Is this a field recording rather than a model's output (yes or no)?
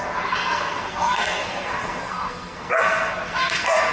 no